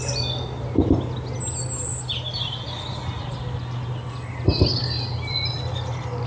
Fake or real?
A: real